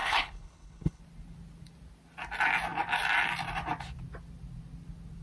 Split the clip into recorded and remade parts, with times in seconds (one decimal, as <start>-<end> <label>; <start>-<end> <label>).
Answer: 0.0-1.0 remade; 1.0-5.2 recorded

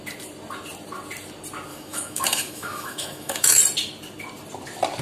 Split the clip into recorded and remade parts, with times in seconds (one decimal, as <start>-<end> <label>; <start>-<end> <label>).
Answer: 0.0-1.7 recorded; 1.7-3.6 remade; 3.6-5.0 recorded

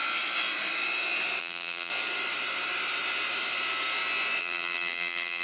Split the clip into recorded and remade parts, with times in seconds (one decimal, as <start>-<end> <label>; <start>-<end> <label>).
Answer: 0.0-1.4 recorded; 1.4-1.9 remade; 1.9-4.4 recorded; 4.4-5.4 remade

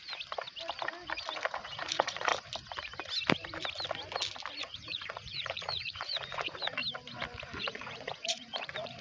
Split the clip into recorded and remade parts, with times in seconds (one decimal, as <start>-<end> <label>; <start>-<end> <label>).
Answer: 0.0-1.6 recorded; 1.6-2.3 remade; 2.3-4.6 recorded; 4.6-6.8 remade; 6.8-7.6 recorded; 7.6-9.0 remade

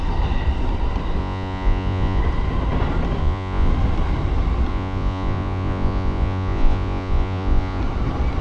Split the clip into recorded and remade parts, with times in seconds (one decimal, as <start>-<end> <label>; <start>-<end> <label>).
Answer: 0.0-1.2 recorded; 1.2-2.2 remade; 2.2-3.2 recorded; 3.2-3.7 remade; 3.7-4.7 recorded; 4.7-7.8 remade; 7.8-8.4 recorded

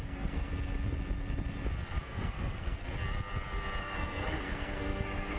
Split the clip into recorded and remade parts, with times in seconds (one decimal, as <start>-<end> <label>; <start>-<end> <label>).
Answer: 0.0-0.5 remade; 0.5-2.0 recorded; 2.0-2.8 remade; 2.8-3.8 recorded; 3.8-5.4 remade

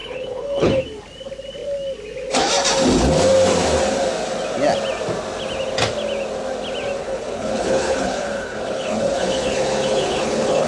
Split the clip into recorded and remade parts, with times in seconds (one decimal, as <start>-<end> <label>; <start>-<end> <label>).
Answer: 0.0-0.8 remade; 0.8-7.0 recorded; 7.0-10.7 remade